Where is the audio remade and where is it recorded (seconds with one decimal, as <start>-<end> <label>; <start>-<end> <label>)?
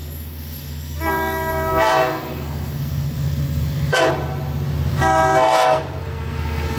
0.0-4.1 remade; 4.1-4.9 recorded; 4.9-6.8 remade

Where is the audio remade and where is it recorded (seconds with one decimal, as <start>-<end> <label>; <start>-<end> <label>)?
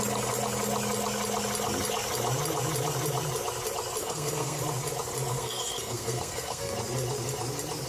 0.0-4.0 recorded; 4.0-4.6 remade; 4.6-5.3 recorded; 5.3-6.7 remade; 6.7-7.9 recorded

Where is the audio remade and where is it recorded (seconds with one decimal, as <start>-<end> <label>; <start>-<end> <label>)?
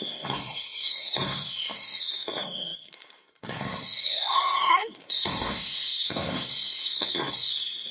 0.0-7.9 remade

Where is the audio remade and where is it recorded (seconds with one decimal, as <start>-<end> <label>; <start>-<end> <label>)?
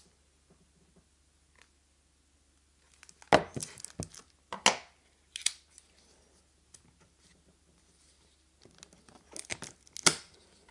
0.0-10.7 recorded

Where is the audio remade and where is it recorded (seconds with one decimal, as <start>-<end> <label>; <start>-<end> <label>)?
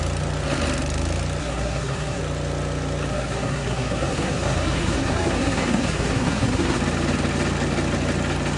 0.0-1.4 recorded; 1.4-2.2 remade; 2.2-3.1 recorded; 3.1-6.8 remade; 6.8-8.6 recorded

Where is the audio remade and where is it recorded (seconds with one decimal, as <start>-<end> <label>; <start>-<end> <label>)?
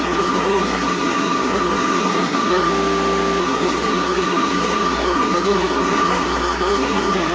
0.0-2.7 remade; 2.7-3.4 recorded; 3.4-7.3 remade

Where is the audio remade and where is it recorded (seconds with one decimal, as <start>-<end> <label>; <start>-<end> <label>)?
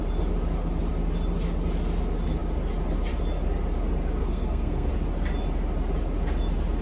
0.0-4.2 recorded; 4.2-4.9 remade; 4.9-6.8 recorded